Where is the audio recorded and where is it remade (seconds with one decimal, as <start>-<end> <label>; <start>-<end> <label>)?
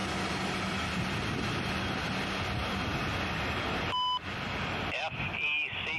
0.0-6.0 recorded